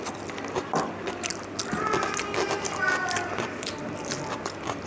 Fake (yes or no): no